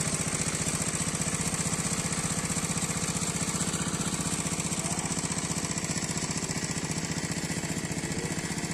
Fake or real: real